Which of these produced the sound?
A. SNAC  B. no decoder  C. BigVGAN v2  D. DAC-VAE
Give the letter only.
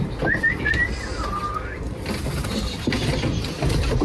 B